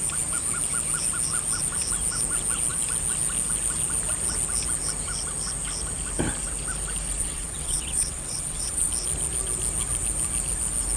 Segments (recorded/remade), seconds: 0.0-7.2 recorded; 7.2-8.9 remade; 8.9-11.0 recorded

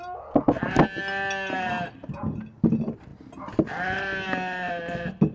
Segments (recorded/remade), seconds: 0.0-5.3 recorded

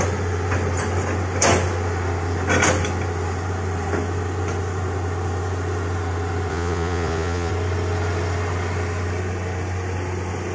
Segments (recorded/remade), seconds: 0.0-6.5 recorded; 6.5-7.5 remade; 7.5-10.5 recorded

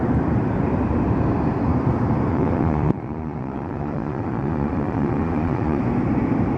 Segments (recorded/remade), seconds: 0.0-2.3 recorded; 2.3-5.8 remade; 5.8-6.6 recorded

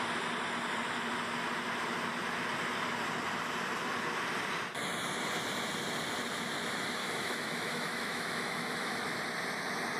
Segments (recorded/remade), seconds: 0.0-7.0 recorded; 7.0-9.2 remade; 9.2-10.0 recorded